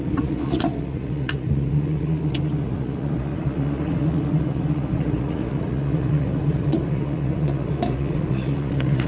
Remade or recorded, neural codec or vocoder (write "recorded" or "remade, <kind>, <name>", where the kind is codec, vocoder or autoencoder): remade, vocoder, Vocos